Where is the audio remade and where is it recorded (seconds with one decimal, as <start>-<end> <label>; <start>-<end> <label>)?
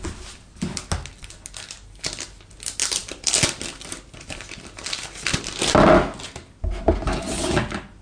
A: 0.0-8.0 recorded